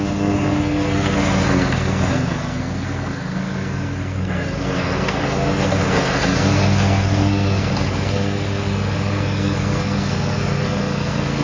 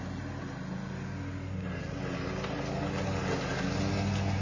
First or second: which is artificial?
first